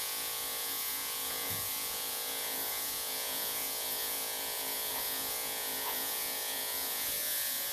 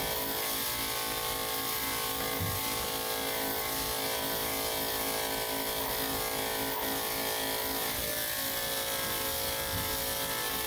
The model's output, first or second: first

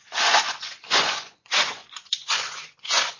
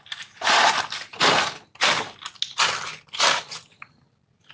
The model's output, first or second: first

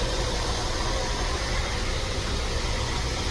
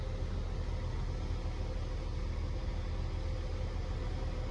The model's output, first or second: first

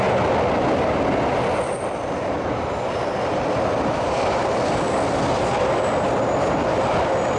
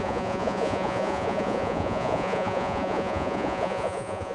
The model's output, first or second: second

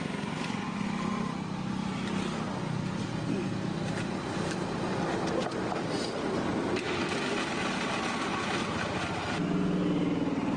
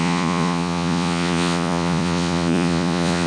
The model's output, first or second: second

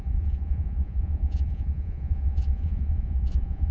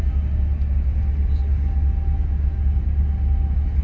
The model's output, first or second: first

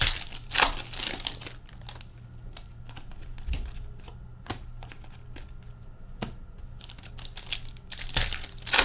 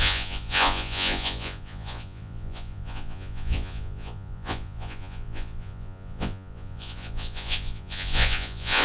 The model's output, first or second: second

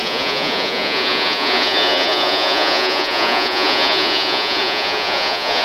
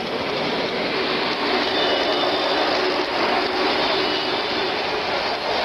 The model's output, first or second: first